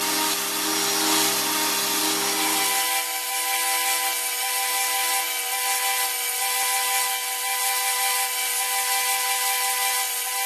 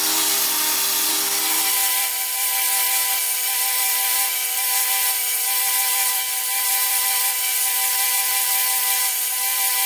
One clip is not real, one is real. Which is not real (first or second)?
second